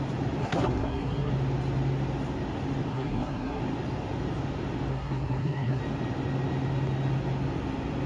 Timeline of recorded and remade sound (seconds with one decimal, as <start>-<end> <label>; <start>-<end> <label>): 0.0-0.4 recorded; 0.4-1.3 remade; 1.3-2.9 recorded; 2.9-3.6 remade; 3.6-4.9 recorded; 4.9-5.8 remade; 5.8-8.1 recorded